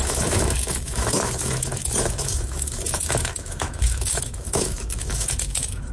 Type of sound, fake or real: fake